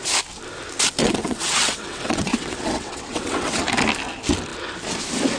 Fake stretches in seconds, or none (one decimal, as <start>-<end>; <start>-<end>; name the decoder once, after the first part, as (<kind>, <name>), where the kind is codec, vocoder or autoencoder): 1.0-3.6 (vocoder, WaveNeXt)